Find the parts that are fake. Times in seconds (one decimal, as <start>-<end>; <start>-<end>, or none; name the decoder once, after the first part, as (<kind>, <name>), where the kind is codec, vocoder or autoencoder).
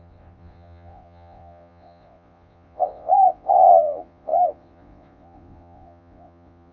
0.0-6.7 (vocoder, Vocos)